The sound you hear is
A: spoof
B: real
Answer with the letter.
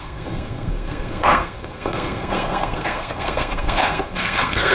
A